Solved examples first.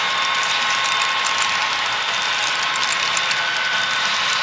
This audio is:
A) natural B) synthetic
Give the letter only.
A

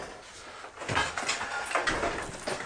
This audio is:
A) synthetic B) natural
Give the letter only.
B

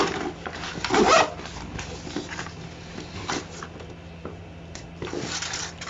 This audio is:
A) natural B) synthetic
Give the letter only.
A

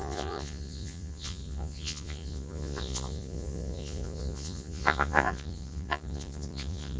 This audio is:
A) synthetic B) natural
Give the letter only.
A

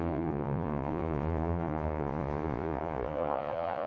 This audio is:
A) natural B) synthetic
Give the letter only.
B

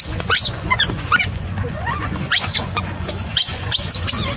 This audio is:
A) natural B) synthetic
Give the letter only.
B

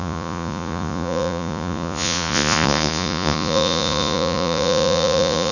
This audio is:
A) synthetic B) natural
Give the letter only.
A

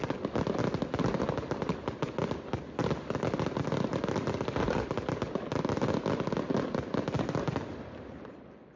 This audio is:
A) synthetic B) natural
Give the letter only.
B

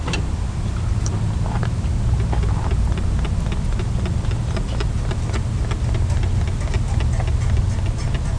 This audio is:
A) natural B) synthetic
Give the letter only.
A